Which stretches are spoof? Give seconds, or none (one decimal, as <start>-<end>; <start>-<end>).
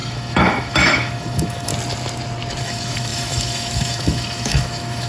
0.0-1.7; 2.6-5.1